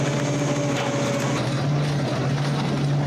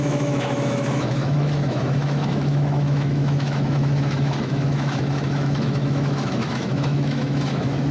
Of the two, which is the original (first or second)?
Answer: first